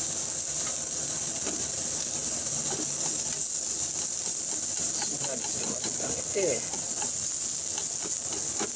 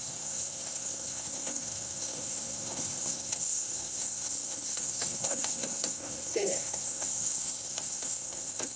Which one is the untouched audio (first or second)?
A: first